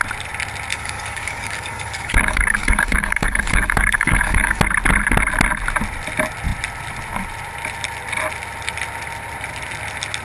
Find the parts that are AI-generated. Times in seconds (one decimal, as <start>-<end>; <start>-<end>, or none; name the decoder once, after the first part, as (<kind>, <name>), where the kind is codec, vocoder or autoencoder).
0.7-4.6 (codec, DAC)